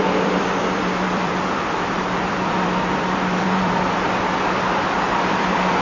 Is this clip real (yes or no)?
no